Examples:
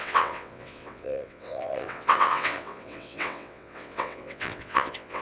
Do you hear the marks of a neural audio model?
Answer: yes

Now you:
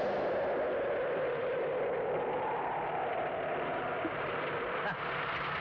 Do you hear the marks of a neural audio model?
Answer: no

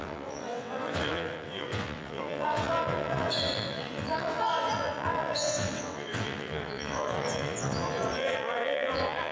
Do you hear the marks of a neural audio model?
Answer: yes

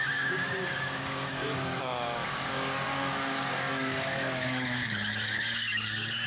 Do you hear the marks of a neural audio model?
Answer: yes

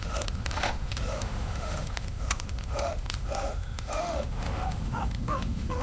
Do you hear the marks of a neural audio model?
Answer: yes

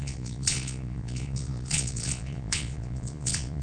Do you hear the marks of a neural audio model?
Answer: yes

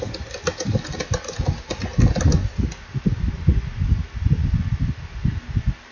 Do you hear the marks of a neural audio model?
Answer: no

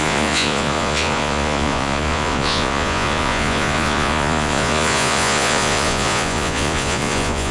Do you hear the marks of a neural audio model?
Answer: yes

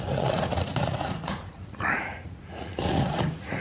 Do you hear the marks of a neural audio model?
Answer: yes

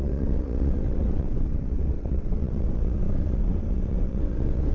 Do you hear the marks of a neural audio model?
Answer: yes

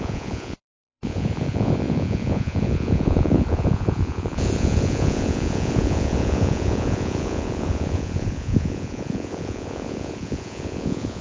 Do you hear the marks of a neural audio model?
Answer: yes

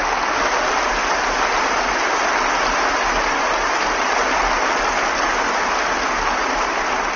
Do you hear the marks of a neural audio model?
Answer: no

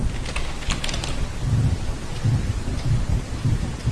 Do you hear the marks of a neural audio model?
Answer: no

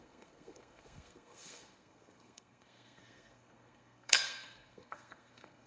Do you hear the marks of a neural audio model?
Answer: yes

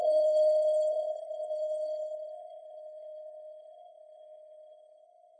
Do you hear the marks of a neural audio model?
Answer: yes